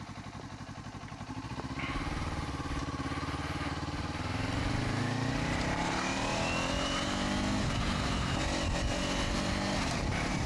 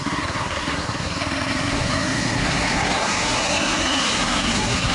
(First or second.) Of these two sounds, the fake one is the second